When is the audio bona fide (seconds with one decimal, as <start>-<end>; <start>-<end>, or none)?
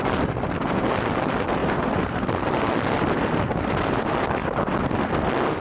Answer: 0.0-1.6; 2.3-4.4; 4.9-5.6